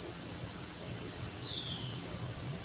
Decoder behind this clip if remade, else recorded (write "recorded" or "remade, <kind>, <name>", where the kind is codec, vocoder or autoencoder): remade, vocoder, WaveNeXt